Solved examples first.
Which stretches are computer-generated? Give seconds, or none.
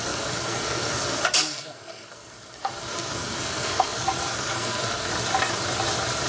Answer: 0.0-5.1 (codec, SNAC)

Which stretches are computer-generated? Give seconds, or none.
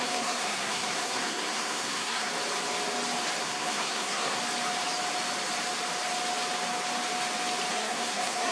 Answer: 0.0-2.3 (codec, SNAC); 3.4-4.4; 7.7-8.5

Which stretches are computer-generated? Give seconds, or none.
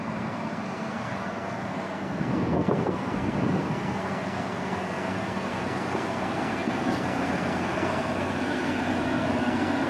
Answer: 0.0-9.9 (codec, SNAC)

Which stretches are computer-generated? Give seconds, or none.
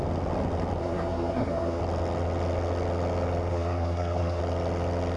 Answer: 0.8-1.8 (codec, SNAC); 3.5-4.4